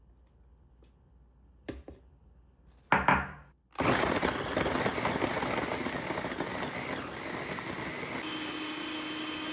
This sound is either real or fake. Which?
real